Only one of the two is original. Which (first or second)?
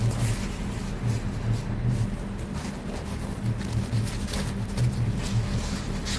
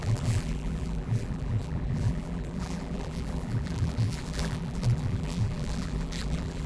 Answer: first